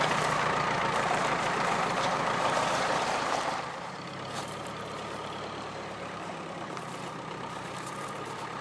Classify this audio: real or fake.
fake